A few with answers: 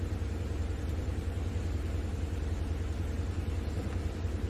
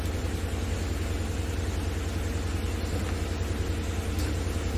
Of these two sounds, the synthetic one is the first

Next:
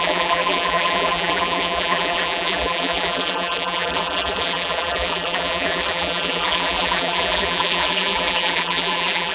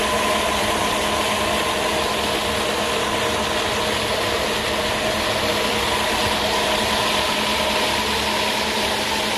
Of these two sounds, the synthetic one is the first